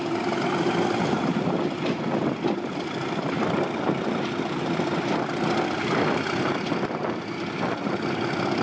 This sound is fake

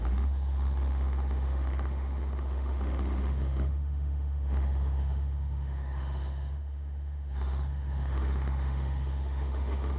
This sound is fake